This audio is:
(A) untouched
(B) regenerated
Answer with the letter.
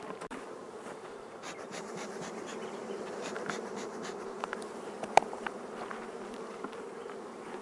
B